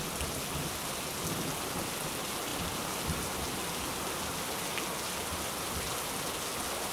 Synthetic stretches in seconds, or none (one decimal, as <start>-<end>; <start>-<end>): none